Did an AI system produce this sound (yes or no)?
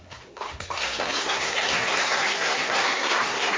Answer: yes